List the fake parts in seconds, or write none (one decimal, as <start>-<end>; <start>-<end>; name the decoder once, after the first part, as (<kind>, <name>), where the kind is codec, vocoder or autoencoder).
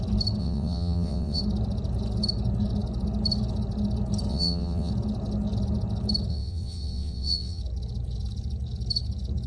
0.4-1.4 (vocoder, WaveNeXt); 4.3-4.9; 6.3-7.6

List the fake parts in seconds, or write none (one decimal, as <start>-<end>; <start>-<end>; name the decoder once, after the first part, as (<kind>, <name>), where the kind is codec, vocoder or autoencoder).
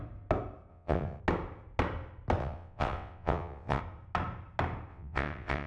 0.7-1.2 (vocoder, WaveNeXt); 2.4-3.8; 4.9-5.7